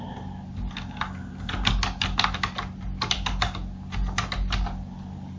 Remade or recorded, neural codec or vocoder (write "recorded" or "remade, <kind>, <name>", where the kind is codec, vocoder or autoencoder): recorded